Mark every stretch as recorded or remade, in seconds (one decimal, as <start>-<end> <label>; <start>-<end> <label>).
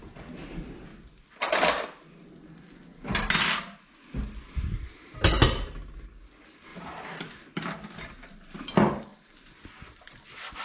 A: 0.0-6.7 recorded; 6.7-9.7 remade; 9.7-10.6 recorded